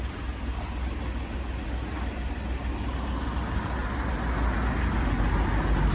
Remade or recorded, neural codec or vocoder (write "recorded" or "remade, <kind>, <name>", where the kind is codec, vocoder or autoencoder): recorded